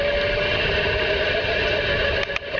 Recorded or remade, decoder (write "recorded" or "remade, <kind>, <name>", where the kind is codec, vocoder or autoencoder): recorded